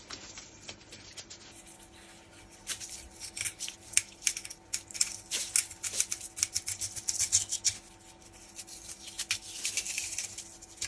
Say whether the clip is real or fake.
real